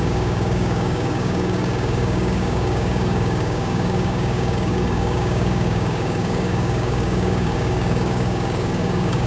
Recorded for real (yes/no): no